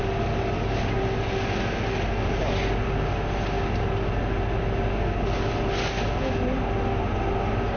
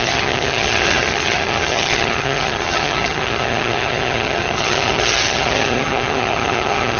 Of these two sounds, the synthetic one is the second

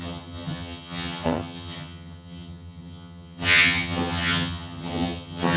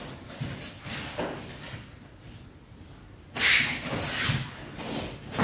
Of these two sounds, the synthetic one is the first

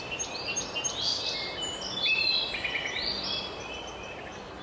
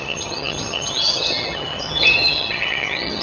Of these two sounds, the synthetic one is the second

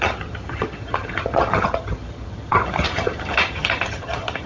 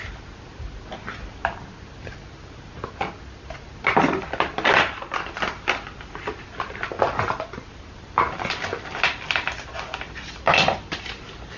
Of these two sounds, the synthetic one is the first